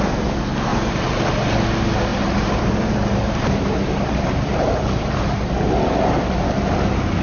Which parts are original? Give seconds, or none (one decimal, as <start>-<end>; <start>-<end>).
0.0-0.7; 1.2-2.1; 5.3-7.2